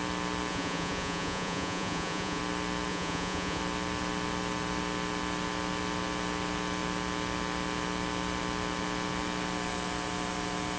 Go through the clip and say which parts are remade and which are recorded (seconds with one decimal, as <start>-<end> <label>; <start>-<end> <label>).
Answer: 0.0-0.5 recorded; 0.5-2.4 remade; 2.4-2.9 recorded; 2.9-3.6 remade; 3.6-10.8 recorded